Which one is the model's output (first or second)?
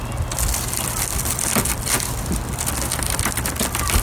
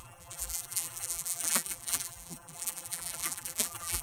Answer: second